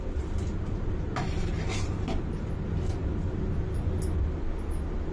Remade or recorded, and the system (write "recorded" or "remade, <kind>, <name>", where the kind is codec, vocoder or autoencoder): recorded